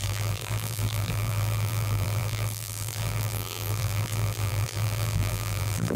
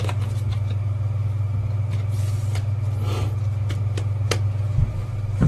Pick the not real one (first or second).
first